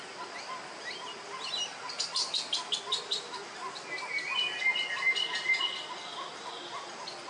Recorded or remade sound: recorded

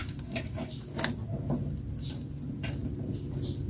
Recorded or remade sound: recorded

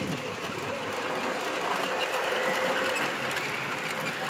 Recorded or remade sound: recorded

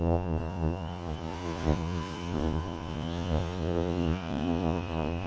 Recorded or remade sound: remade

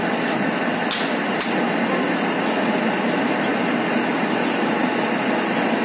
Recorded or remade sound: recorded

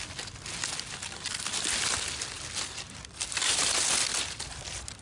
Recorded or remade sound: recorded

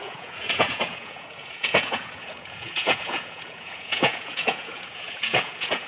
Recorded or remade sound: remade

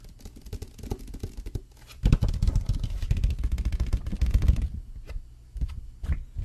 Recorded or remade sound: recorded